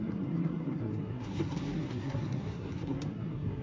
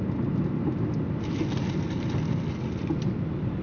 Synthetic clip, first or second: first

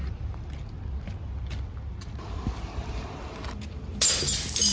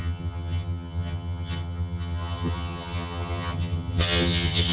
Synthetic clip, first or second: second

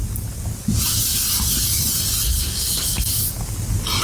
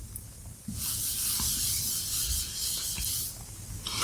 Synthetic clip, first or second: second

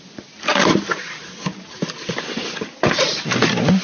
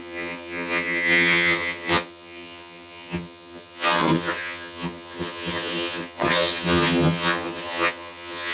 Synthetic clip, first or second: second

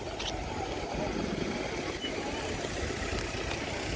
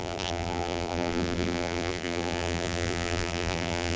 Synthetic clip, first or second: second